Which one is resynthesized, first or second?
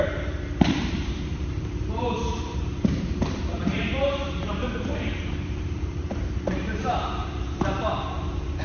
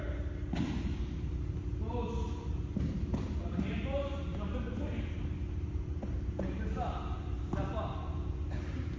first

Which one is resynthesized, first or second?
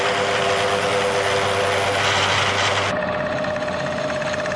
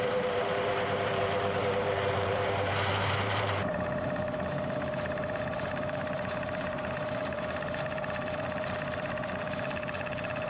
second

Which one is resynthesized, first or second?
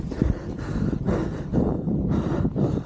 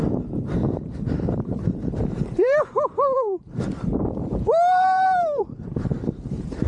second